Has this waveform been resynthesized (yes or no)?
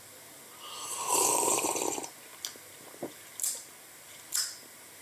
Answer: no